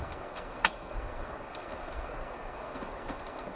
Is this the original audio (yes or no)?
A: no